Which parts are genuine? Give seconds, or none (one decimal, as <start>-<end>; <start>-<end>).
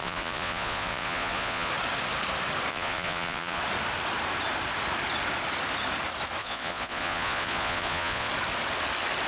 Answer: 1.7-2.7; 3.6-6.4; 8.3-9.3